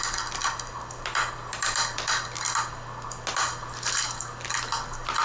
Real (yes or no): yes